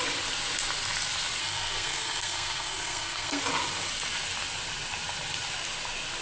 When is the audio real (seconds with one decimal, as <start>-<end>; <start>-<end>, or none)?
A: 0.0-1.4; 3.4-6.2